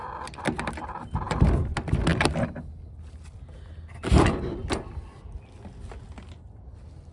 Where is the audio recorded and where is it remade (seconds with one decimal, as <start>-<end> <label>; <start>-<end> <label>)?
0.0-7.1 recorded